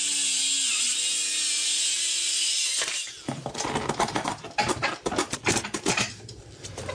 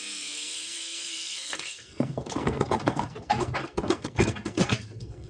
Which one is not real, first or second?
second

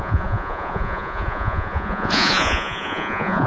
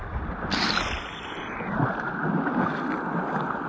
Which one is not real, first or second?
first